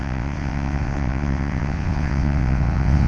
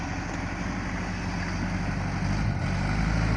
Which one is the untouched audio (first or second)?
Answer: second